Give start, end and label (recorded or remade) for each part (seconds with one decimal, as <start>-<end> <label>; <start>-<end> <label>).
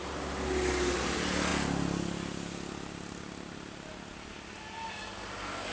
0.0-5.7 recorded